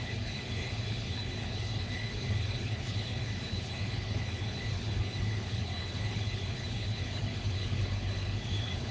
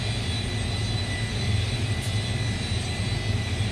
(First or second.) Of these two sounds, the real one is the second